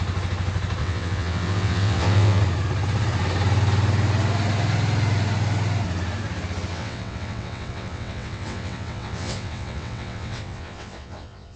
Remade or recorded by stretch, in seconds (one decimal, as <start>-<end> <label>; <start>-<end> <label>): 0.0-0.8 recorded; 0.8-2.4 remade; 2.4-6.7 recorded; 6.7-11.6 remade

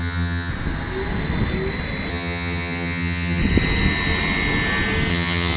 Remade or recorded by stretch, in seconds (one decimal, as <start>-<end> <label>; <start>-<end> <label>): 0.0-0.5 remade; 0.5-2.1 recorded; 2.1-3.4 remade; 3.4-5.1 recorded; 5.1-5.6 remade

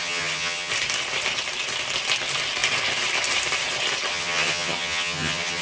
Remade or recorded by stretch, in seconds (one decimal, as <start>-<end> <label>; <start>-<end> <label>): 0.0-0.7 remade; 0.7-4.1 recorded; 4.1-5.6 remade